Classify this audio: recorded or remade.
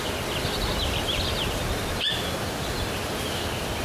recorded